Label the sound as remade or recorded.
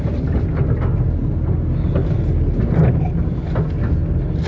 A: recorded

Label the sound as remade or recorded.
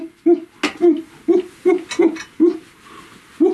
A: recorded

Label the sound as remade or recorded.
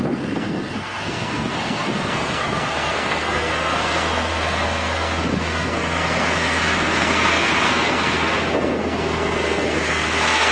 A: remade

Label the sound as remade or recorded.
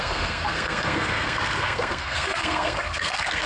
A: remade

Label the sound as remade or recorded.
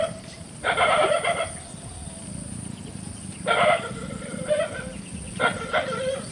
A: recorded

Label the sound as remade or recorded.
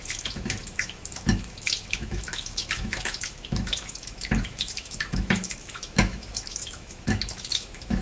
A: remade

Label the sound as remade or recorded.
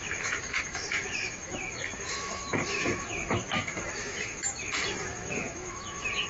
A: remade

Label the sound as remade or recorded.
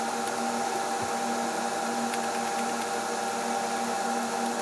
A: recorded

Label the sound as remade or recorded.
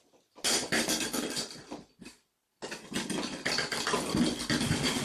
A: recorded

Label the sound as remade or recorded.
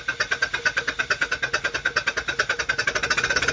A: recorded